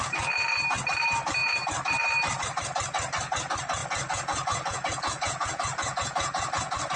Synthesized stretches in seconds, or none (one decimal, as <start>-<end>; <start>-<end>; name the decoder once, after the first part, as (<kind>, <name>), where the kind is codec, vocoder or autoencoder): 3.8-7.0 (vocoder, Vocos)